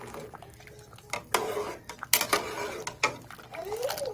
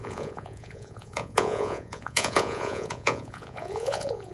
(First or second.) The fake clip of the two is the second